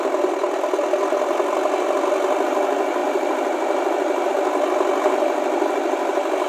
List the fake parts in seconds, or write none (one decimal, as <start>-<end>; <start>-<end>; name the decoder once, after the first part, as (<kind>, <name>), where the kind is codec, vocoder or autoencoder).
none